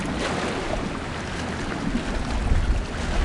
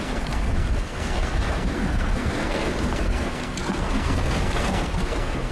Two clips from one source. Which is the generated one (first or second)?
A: second